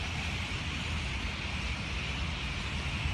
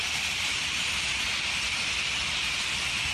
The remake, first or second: second